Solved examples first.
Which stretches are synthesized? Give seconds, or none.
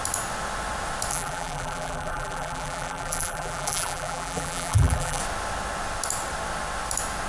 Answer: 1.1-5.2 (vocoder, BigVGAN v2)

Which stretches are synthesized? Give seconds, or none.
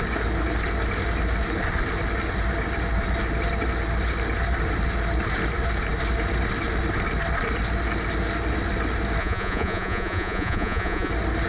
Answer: 9.2-11.1 (vocoder, Vocos)